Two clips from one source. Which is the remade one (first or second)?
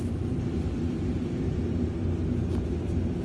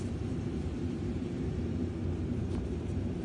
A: second